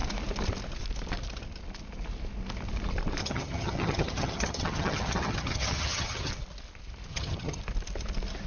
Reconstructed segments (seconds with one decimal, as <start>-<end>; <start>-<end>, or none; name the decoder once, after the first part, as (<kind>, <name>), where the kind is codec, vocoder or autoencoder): 3.2-6.3 (vocoder, HiFi-GAN); 7.1-7.6